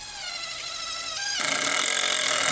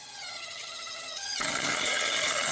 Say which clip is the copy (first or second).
second